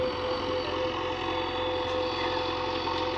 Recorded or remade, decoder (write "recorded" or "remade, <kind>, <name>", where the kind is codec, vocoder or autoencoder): recorded